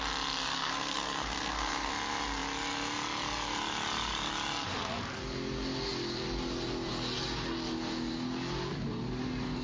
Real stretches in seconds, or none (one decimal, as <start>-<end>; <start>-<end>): 0.0-0.5; 1.9-9.6